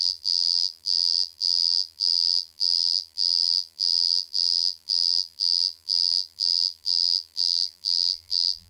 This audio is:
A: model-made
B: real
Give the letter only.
A